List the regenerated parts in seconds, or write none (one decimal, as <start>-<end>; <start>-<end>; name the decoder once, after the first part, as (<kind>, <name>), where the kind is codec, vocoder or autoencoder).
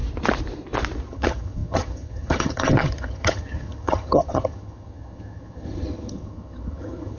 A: 1.1-7.2 (vocoder, HiFi-GAN)